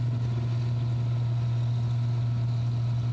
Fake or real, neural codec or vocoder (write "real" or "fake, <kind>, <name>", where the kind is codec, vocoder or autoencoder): real